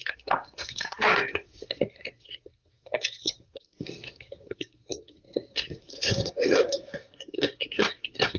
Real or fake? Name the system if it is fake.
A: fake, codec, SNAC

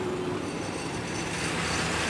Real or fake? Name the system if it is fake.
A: real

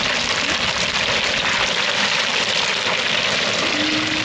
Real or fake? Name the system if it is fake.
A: real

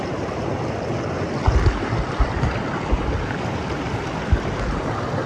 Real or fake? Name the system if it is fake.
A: real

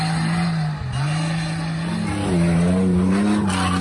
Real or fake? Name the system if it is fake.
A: real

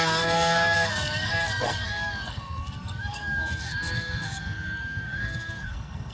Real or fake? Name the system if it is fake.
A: fake, codec, SNAC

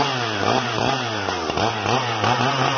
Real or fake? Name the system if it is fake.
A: fake, vocoder, BigVGAN v2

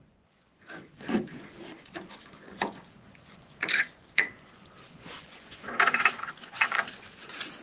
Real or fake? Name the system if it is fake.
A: fake, vocoder, Vocos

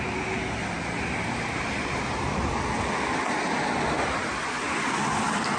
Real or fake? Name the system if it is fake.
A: real